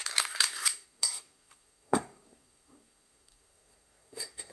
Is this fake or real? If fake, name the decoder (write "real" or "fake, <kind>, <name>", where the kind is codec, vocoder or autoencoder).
fake, codec, SNAC